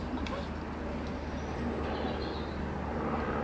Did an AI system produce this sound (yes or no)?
no